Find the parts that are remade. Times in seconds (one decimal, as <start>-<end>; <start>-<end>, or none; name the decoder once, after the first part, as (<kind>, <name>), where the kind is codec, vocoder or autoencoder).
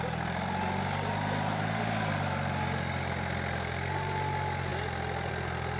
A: none